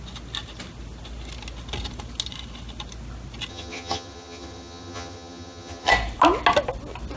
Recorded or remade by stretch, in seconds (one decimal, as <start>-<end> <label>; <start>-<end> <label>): 0.0-3.5 recorded; 3.5-5.9 remade; 5.9-7.2 recorded